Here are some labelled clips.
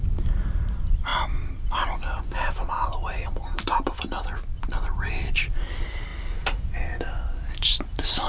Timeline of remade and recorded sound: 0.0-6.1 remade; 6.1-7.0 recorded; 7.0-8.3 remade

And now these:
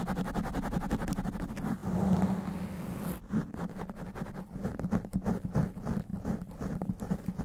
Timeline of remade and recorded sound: 0.0-7.4 recorded

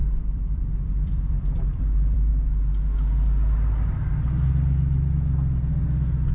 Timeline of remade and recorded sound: 0.0-2.3 remade; 2.3-6.3 recorded